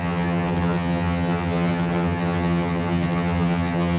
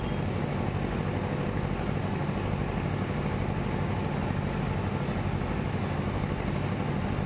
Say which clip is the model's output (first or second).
first